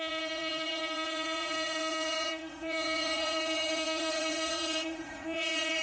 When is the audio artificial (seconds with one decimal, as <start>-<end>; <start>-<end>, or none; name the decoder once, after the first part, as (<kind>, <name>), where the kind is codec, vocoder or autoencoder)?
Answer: 0.0-5.8 (vocoder, Vocos)